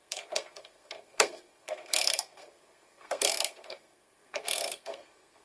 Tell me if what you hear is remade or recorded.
remade